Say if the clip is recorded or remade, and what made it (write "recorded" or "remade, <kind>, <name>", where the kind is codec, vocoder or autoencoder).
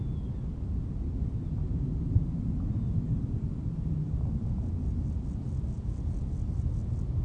recorded